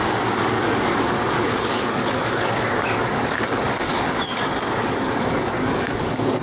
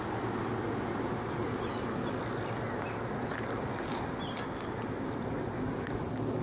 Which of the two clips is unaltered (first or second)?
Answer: second